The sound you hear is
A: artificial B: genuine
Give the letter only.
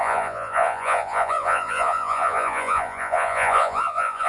A